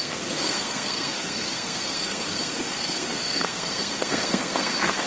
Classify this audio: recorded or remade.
remade